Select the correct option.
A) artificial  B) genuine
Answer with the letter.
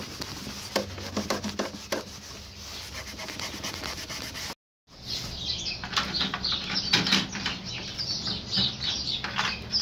B